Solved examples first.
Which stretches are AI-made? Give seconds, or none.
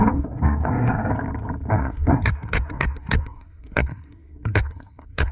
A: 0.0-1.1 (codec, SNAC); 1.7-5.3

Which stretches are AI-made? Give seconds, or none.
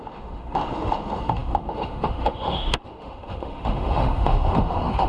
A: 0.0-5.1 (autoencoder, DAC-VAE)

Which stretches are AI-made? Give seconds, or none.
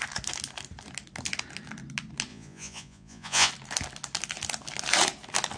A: 2.3-3.5 (vocoder, Vocos)